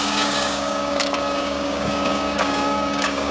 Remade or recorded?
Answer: remade